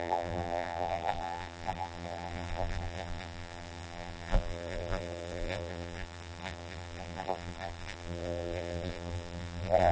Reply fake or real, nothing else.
fake